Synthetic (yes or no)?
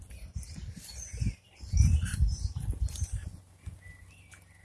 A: no